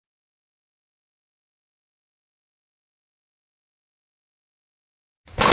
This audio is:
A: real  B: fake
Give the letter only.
A